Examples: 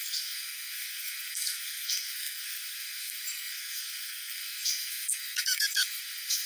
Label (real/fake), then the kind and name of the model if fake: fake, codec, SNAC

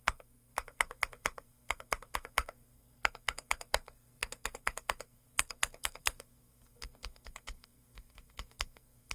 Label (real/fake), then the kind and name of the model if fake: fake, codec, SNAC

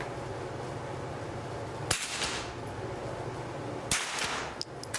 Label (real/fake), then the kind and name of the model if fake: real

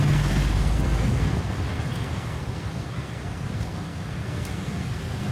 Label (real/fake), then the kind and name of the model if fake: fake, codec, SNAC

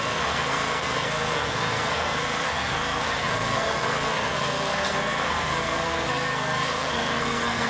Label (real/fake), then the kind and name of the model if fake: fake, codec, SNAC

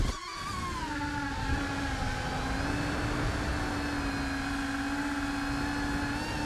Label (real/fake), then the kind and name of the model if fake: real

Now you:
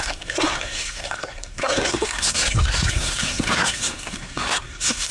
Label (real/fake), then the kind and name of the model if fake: fake, codec, SNAC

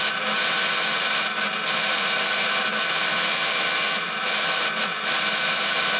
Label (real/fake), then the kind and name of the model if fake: real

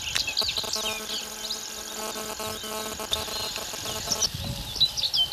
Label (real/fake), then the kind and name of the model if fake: real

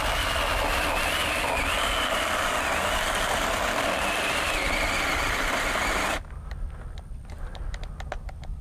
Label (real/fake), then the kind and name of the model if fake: real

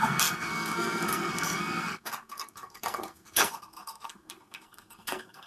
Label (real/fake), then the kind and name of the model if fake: fake, codec, SNAC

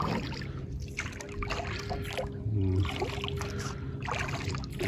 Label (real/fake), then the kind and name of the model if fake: real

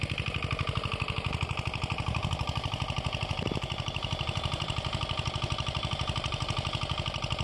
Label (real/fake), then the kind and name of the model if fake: real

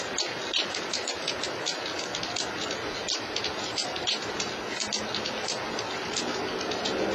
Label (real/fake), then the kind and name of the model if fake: real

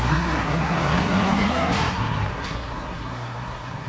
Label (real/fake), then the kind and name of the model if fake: fake, codec, SNAC